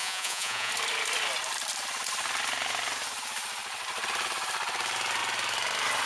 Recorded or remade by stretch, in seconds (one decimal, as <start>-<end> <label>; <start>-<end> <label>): 0.0-0.7 remade; 0.7-6.1 recorded